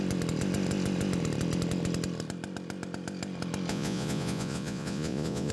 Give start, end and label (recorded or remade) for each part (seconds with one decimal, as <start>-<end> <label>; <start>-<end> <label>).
0.0-3.7 recorded; 3.7-5.5 remade

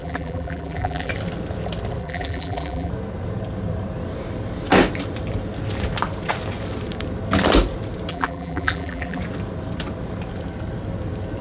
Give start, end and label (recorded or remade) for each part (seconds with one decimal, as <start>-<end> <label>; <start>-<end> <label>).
0.0-1.1 remade; 1.1-2.0 recorded; 2.0-2.9 remade; 2.9-8.1 recorded; 8.1-9.2 remade; 9.2-11.4 recorded

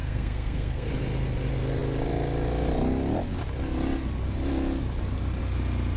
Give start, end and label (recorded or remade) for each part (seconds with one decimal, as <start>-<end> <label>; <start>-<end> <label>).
0.0-0.9 remade; 0.9-6.0 recorded

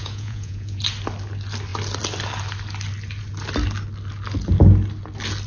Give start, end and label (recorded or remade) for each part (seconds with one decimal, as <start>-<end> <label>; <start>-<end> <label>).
0.0-0.8 remade; 0.8-5.5 recorded

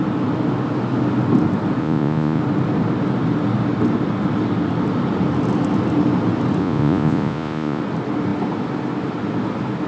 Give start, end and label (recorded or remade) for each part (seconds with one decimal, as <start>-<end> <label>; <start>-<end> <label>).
0.0-1.8 recorded; 1.8-2.4 remade; 2.4-6.6 recorded; 6.6-7.8 remade; 7.8-9.9 recorded

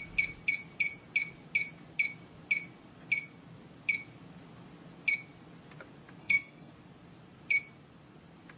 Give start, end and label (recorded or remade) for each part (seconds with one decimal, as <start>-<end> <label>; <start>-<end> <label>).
0.0-6.2 recorded; 6.2-6.7 remade; 6.7-8.6 recorded